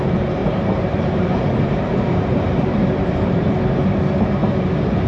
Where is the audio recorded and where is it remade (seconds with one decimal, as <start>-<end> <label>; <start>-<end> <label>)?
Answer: 0.0-0.4 recorded; 0.4-3.5 remade; 3.5-5.1 recorded